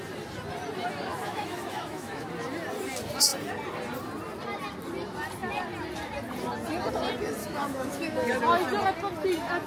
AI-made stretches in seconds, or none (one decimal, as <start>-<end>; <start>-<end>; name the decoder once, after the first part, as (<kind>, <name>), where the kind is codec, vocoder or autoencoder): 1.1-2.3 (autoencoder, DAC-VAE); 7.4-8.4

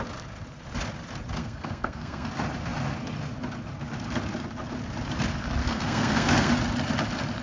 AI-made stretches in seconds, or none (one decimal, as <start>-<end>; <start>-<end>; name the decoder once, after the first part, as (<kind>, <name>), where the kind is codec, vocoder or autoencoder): 1.4-2.3 (codec, SNAC); 5.6-6.5

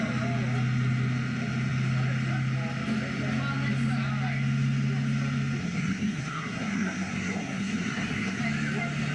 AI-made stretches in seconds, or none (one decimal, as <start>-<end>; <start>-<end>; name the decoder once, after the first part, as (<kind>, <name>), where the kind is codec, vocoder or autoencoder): 5.6-8.4 (codec, SNAC)

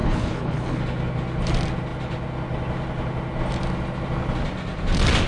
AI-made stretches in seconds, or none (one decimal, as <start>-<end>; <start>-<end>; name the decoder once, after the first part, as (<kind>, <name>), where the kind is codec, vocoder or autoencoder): 0.0-0.8 (codec, HILCodec)